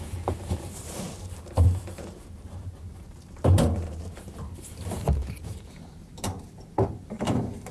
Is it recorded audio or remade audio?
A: remade